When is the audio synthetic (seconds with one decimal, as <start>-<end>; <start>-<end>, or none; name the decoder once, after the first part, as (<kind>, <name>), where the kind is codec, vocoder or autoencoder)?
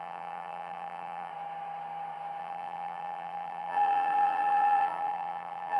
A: 0.0-1.3 (vocoder, BigVGAN v2); 2.4-5.8